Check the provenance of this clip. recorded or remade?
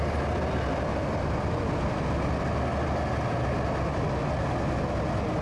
recorded